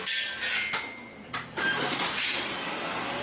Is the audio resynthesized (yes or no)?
no